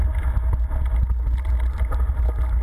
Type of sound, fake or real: real